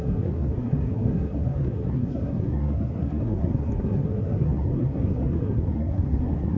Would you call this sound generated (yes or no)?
yes